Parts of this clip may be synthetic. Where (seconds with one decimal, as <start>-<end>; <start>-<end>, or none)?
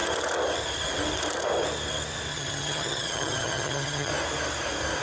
2.3-4.1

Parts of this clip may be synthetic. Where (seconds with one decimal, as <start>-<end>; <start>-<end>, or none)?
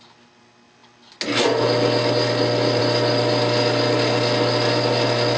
none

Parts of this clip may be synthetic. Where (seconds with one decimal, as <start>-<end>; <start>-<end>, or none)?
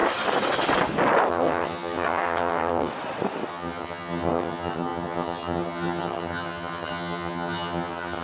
1.3-2.9; 3.5-8.2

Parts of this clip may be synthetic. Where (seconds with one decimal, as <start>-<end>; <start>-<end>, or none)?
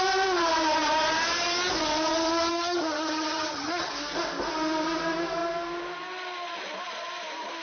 2.5-3.9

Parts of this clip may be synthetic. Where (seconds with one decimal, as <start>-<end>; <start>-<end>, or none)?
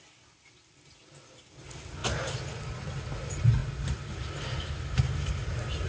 none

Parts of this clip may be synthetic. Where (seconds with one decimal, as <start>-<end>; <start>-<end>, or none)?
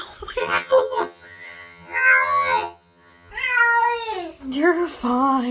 0.4-3.3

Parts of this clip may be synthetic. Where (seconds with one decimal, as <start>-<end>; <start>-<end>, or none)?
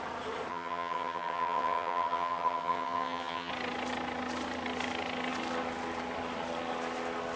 0.5-3.5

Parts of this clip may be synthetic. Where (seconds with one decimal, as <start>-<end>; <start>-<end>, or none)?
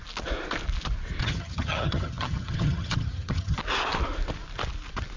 1.2-3.6